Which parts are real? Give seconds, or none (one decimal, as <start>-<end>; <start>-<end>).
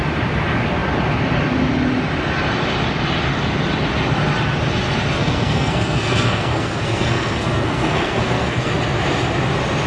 0.0-5.2; 8.7-9.9